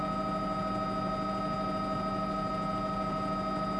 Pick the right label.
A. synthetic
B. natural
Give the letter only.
B